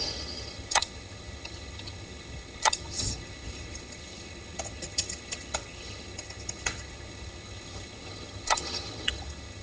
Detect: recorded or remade remade